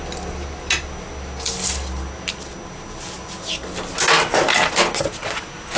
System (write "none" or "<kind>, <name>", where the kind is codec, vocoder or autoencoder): none